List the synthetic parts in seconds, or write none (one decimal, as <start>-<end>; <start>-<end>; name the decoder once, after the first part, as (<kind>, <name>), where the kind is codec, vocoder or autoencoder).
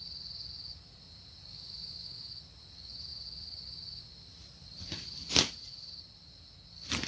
1.5-2.3 (autoencoder, DAC-VAE)